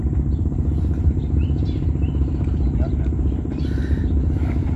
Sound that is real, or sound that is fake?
real